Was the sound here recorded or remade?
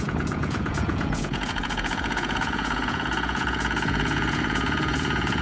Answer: remade